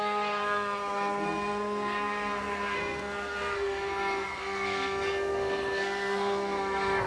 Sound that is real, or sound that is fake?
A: fake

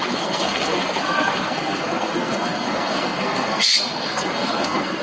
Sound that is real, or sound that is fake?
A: fake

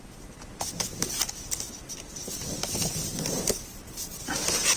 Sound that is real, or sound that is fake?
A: real